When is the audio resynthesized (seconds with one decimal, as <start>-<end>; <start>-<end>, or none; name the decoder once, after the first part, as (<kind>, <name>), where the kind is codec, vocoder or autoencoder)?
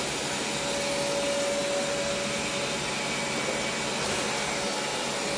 none